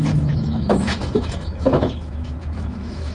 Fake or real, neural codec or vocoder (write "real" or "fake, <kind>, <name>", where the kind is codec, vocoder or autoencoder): fake, autoencoder, DAC-VAE